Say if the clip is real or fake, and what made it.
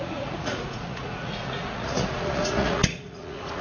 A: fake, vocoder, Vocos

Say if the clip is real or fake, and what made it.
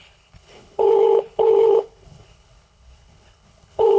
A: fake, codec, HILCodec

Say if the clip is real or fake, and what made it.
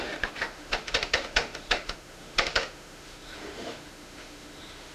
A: fake, autoencoder, DAC-VAE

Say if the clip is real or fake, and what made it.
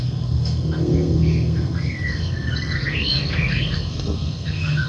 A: fake, codec, SNAC